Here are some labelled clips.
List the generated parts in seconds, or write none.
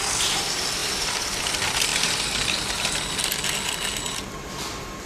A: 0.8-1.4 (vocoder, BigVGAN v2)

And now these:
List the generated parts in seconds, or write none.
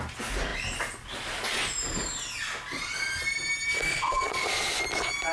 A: 3.9-4.7 (vocoder, Vocos)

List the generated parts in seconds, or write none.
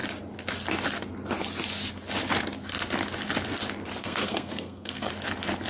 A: 4.0-5.1 (codec, SNAC)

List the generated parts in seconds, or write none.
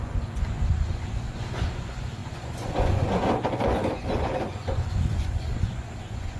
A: 0.0-6.4 (vocoder, Vocos)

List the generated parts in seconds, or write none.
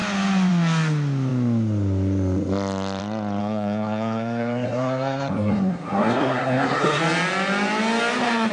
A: 3.4-7.0 (codec, SNAC)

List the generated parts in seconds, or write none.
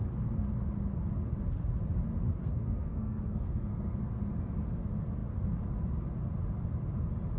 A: 2.4-4.0 (codec, SNAC)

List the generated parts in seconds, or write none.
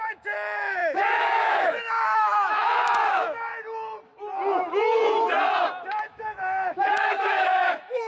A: 0.0-3.5 (autoencoder, DAC-VAE); 6.0-8.1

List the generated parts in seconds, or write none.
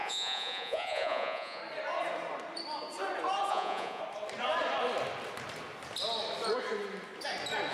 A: 0.0-1.6 (vocoder, Vocos); 3.5-4.0